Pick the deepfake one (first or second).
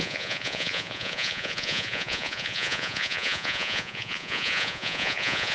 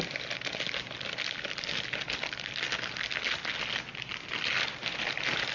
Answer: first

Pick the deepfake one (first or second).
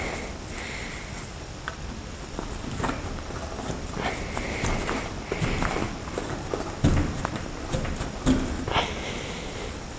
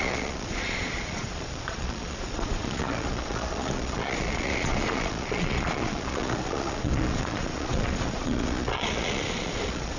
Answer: second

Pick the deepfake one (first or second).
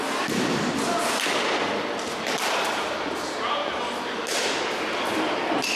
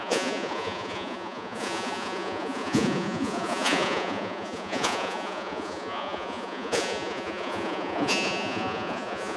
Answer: second